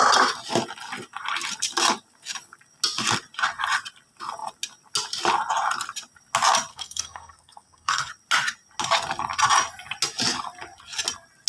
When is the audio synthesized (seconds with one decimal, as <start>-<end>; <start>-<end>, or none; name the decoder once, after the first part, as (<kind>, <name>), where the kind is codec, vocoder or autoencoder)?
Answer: 6.7-8.1 (codec, SNAC)